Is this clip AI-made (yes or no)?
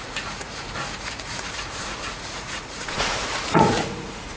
yes